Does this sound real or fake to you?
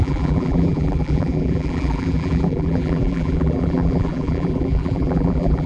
fake